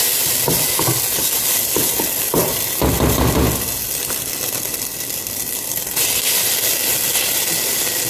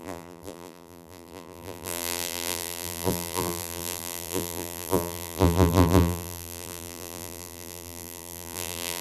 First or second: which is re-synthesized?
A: second